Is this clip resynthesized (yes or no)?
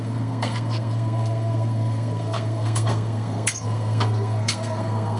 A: yes